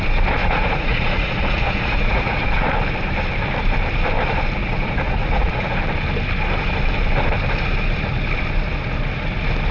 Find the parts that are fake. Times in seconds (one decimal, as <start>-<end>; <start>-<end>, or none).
0.4-2.7; 4.6-5.8